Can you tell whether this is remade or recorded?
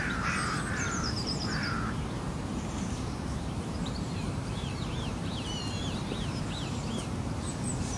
remade